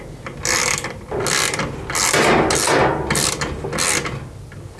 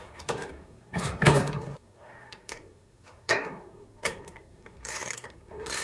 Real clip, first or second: first